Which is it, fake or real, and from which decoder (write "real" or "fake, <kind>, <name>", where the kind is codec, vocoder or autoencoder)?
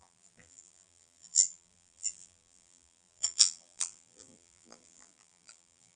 fake, vocoder, BigVGAN v2